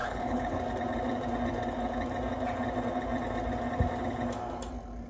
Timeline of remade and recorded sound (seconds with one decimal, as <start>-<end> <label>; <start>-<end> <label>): 0.0-0.6 remade; 0.6-5.1 recorded